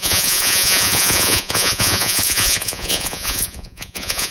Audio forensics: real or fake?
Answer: fake